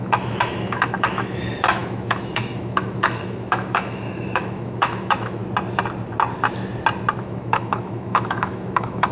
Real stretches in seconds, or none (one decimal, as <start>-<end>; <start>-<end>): 5.4-7.2